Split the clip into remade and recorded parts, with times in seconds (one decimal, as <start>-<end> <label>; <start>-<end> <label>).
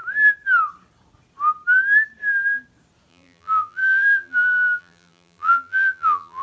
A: 0.0-3.1 recorded; 3.1-6.4 remade